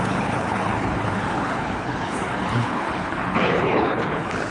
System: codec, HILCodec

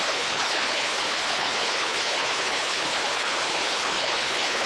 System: codec, HILCodec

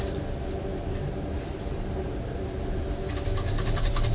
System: none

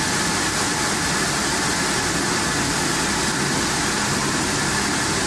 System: none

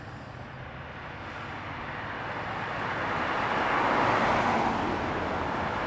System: none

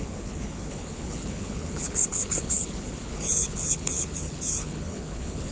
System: codec, HILCodec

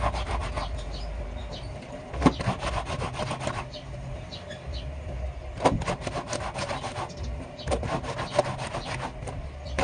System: none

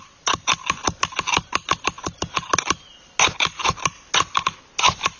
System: none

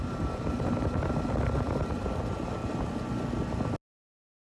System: none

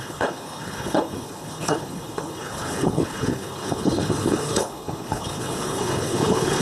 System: codec, HILCodec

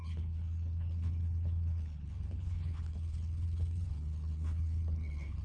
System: codec, HILCodec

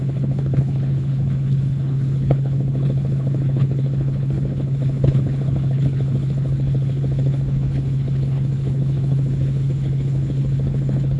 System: codec, HILCodec